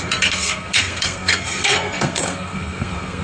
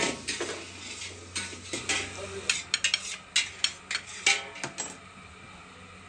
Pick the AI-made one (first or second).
first